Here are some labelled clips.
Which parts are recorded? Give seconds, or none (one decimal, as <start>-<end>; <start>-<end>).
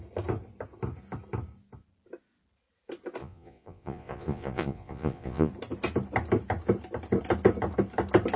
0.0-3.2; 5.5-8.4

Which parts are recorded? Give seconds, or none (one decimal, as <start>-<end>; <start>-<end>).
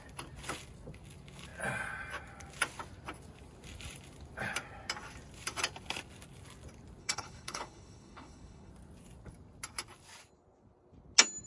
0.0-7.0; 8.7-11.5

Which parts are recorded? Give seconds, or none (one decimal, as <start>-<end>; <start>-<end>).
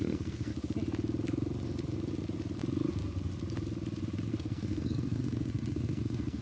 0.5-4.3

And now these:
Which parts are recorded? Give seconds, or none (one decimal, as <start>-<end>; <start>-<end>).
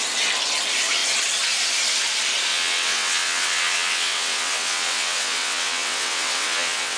0.0-2.5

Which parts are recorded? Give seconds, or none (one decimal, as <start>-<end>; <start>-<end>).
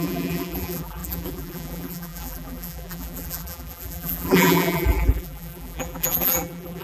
none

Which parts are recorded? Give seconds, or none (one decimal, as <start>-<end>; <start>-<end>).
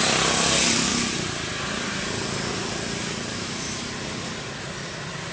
0.0-3.3; 3.9-5.3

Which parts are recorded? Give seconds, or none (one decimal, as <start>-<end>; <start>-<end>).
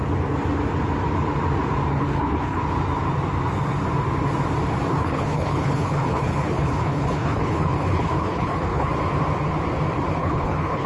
0.0-1.9; 2.6-4.9; 8.9-10.2